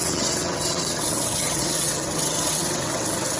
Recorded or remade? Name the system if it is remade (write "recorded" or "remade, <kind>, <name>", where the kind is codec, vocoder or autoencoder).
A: remade, vocoder, WaveNeXt